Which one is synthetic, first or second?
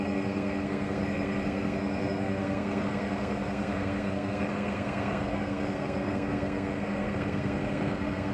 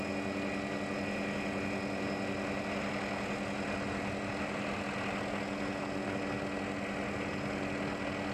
first